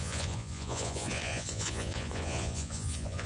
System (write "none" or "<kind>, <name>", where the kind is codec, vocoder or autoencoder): vocoder, Vocos